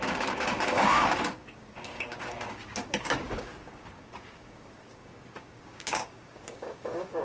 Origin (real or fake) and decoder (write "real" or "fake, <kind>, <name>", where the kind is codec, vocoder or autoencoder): fake, codec, DAC